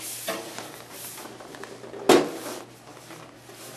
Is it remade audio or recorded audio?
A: recorded